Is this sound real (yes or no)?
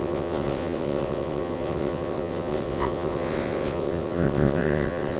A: no